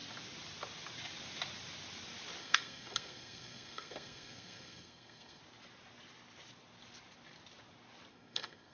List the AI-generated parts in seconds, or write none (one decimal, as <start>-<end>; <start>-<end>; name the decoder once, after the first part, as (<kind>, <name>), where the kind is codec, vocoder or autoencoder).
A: 2.4-5.4 (codec, SNAC); 8.1-8.7